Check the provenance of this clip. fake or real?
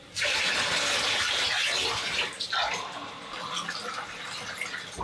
real